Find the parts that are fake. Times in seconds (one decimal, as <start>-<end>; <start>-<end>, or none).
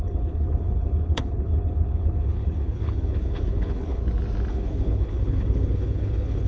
0.0-4.0; 4.5-6.5